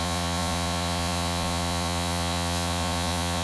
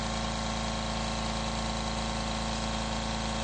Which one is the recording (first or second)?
second